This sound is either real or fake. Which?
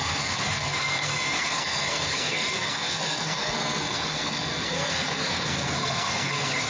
fake